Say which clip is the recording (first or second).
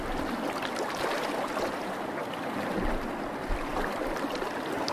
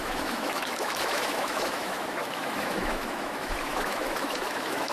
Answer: first